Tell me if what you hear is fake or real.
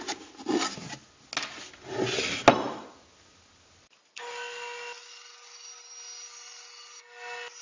real